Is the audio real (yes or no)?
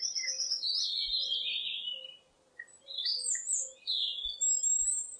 yes